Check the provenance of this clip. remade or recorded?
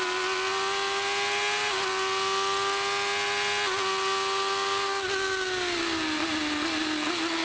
recorded